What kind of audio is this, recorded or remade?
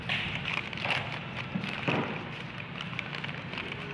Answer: recorded